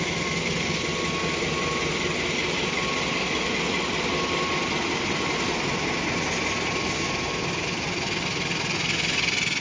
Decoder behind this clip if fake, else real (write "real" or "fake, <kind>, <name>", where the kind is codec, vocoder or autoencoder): real